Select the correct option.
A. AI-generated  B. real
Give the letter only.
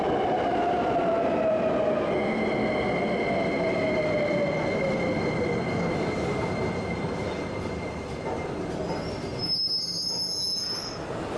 B